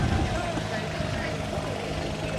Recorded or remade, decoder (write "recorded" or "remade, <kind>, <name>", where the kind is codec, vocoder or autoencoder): recorded